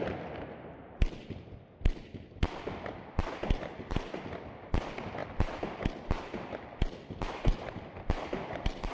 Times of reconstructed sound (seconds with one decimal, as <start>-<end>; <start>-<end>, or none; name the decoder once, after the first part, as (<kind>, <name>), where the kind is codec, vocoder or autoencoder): none

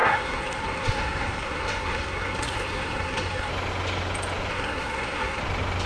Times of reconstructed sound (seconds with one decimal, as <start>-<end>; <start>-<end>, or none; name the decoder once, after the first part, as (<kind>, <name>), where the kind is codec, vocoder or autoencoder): 0.0-3.5 (codec, SNAC); 4.5-5.4

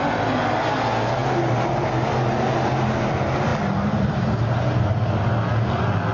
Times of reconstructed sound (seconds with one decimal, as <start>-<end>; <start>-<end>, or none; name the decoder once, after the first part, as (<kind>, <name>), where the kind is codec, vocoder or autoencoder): none

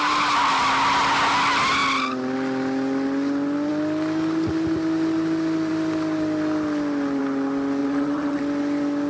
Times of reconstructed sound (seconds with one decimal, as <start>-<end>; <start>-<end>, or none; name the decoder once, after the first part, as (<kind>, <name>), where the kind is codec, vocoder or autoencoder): 7.8-8.4 (vocoder, WaveNeXt)

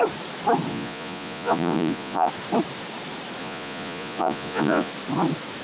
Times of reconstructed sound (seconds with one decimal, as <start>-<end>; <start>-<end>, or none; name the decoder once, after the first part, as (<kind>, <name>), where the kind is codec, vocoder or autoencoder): 0.7-2.3 (vocoder, Vocos); 3.4-4.9

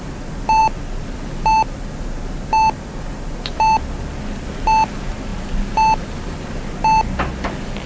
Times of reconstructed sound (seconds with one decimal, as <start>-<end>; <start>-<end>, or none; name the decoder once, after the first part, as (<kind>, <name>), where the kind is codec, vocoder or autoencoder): none

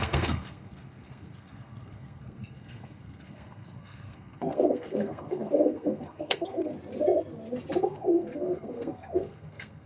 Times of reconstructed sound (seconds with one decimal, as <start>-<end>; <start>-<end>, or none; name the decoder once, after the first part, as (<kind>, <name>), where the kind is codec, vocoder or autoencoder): 0.0-6.7 (codec, SNAC); 7.8-9.9